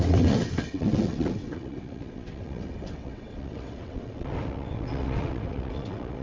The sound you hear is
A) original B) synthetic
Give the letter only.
B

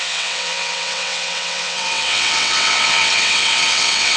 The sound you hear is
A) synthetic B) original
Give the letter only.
A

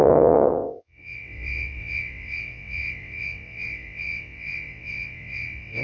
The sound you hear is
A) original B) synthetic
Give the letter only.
B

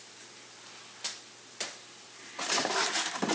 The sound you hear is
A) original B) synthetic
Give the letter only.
A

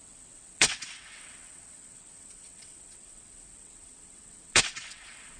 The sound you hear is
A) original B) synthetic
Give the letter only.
B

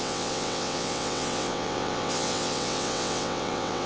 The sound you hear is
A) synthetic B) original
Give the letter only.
A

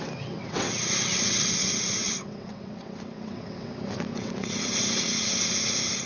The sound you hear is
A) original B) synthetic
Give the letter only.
B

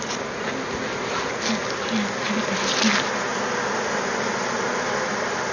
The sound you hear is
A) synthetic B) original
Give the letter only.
B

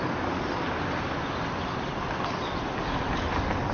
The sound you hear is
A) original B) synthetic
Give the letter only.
A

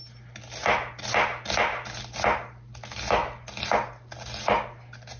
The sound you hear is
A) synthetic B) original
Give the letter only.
B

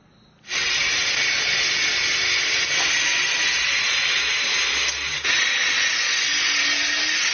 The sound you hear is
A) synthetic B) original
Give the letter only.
B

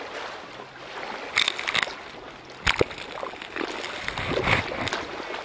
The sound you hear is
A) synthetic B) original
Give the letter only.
B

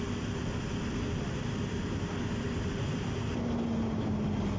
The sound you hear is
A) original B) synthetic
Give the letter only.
A